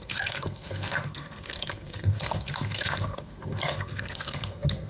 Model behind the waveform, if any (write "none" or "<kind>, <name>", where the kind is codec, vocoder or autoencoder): codec, SNAC